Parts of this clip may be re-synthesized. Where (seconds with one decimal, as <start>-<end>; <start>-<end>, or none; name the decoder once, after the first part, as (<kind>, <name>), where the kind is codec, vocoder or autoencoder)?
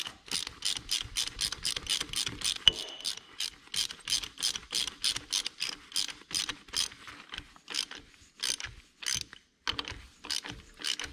none